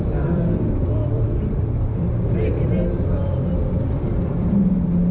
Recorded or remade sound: remade